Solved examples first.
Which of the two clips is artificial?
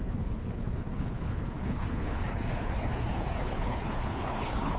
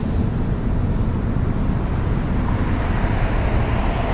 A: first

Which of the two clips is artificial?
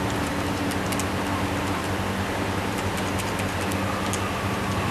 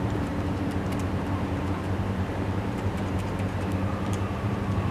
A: second